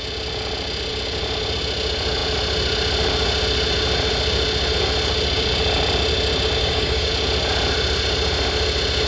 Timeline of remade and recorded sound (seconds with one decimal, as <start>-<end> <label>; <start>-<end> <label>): 0.0-6.6 recorded; 6.6-7.1 remade; 7.1-9.1 recorded